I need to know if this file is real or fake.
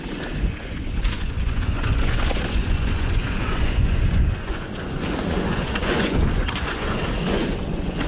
fake